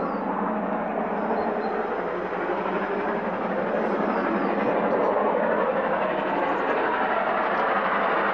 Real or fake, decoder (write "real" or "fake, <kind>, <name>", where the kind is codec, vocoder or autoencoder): real